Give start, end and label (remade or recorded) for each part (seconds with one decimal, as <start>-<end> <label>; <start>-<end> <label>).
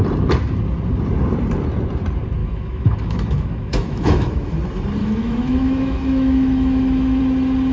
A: 0.0-2.4 recorded; 2.4-4.6 remade; 4.6-5.0 recorded; 5.0-7.2 remade; 7.2-7.7 recorded